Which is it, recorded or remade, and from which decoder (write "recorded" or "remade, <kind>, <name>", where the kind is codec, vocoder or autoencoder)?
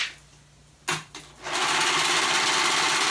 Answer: recorded